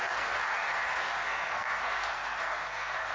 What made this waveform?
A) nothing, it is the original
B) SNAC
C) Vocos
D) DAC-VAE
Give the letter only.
B